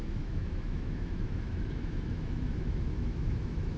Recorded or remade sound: remade